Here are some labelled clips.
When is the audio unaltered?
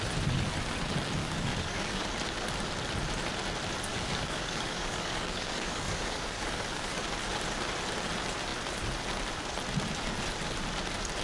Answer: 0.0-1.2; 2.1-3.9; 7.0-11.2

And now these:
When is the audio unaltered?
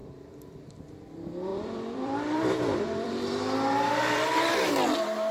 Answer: 1.0-1.5; 4.7-5.3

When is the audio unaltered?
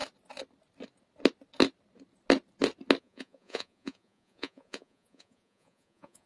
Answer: 0.0-3.0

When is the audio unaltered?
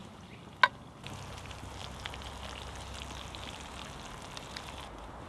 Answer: 0.0-5.3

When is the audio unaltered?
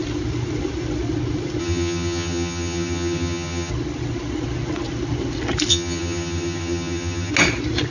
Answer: 0.0-1.6; 3.7-5.7; 7.3-7.9